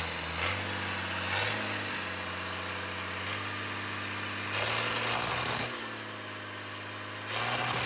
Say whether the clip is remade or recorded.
recorded